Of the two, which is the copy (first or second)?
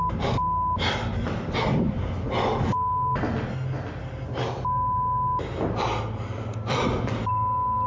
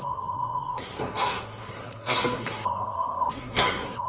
second